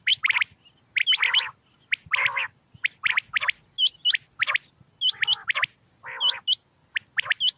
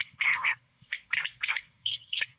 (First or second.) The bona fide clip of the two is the first